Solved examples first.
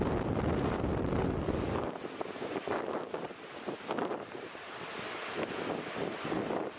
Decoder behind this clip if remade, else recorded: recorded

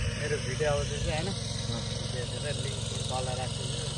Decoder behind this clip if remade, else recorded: recorded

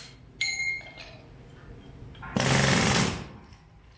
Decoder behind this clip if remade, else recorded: recorded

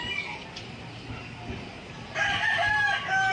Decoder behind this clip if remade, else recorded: recorded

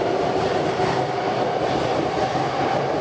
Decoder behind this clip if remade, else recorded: recorded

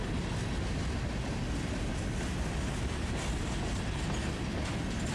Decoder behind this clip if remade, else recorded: recorded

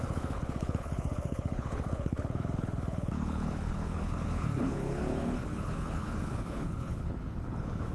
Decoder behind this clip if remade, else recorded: remade, codec, HILCodec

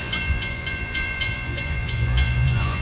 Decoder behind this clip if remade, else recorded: remade, vocoder, Vocos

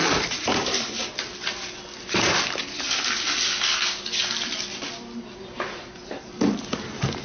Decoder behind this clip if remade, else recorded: recorded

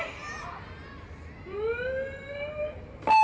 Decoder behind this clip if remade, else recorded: recorded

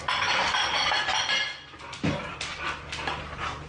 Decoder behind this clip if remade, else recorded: recorded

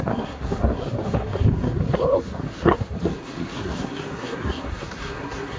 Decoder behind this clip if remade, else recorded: remade, codec, SNAC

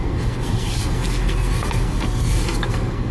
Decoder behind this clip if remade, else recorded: remade, codec, SNAC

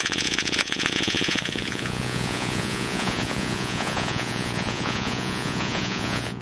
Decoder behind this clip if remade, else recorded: remade, vocoder, Vocos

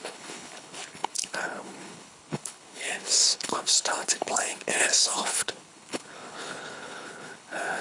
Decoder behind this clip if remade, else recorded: remade, codec, HILCodec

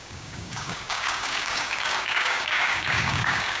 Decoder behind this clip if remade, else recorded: remade, codec, DAC